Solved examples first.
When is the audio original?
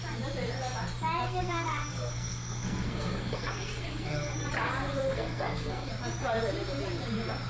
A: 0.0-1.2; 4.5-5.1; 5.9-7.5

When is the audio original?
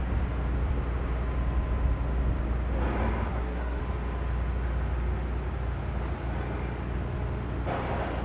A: 0.0-3.3; 3.8-8.2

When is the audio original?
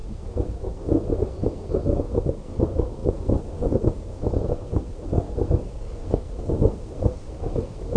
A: none